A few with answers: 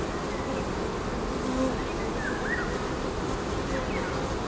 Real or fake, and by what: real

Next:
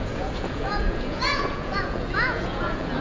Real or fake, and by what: fake, vocoder, Vocos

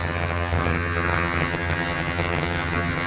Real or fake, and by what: fake, vocoder, HiFi-GAN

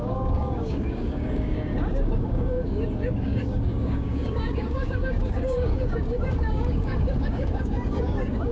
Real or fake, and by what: fake, codec, DAC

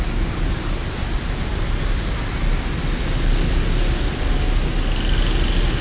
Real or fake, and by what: real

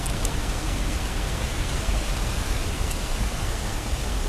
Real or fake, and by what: fake, codec, SNAC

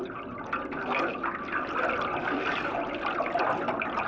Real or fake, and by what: fake, vocoder, BigVGAN v2